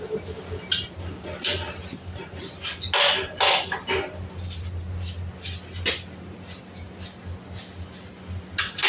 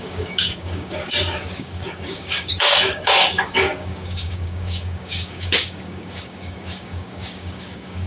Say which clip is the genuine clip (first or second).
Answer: first